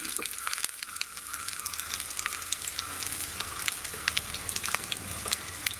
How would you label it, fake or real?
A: fake